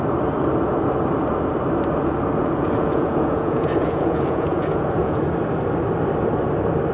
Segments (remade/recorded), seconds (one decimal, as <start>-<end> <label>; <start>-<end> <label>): 0.0-2.4 recorded; 2.4-5.2 remade; 5.2-6.9 recorded